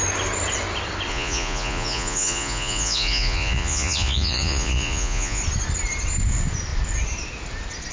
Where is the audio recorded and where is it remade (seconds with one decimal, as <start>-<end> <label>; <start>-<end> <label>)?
0.0-1.1 recorded; 1.1-5.4 remade; 5.4-7.9 recorded